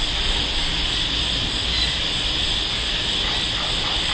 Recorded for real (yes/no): yes